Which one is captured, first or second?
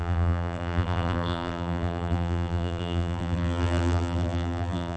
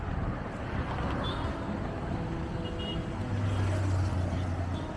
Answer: second